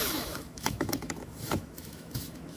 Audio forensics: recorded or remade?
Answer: remade